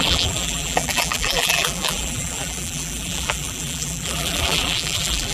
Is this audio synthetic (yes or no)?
yes